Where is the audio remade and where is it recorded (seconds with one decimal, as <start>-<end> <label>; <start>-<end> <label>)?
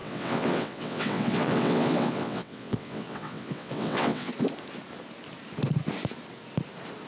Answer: 0.0-4.3 remade; 4.3-7.1 recorded